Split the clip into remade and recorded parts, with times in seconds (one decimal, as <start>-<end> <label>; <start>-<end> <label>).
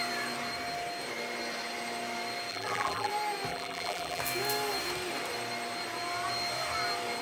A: 0.0-2.5 recorded; 2.5-3.1 remade; 3.1-3.5 recorded; 3.5-4.2 remade; 4.2-7.2 recorded